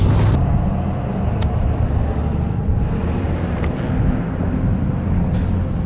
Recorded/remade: recorded